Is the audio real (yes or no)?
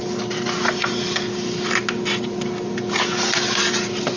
yes